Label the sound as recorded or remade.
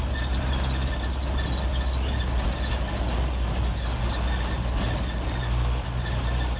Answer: recorded